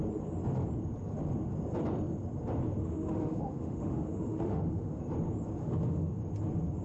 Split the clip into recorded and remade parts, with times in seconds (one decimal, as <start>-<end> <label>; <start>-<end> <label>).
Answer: 0.0-2.8 recorded; 2.8-5.0 remade; 5.0-5.6 recorded; 5.6-6.2 remade; 6.2-6.8 recorded